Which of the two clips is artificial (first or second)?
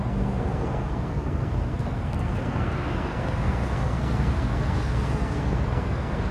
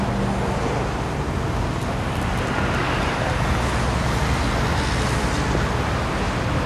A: first